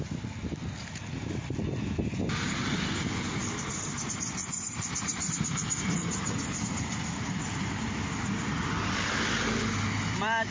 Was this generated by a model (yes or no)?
no